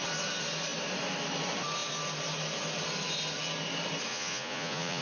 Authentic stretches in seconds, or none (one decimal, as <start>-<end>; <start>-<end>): 0.0-4.1